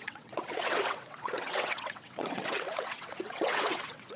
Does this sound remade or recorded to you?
remade